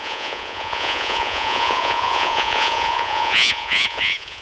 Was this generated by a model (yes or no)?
yes